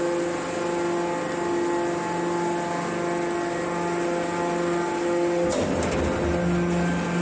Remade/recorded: recorded